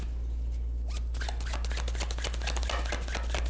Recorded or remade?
recorded